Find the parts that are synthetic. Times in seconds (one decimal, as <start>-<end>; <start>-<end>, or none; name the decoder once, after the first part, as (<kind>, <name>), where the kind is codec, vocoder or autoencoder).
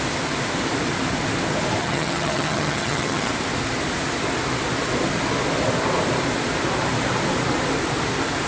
1.8-3.3 (vocoder, HiFi-GAN)